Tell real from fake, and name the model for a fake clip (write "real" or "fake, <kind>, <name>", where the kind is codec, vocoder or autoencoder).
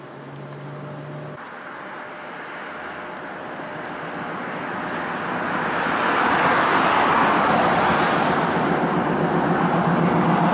real